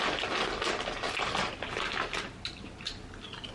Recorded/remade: recorded